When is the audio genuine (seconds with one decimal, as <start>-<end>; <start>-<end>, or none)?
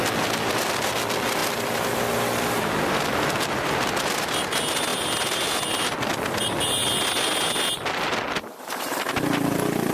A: 0.0-9.9